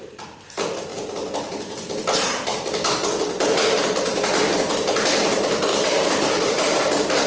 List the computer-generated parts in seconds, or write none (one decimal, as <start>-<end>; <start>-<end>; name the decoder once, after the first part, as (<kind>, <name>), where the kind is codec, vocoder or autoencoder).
5.7-6.8 (vocoder, BigVGAN v2)